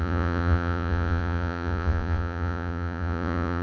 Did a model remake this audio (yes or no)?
yes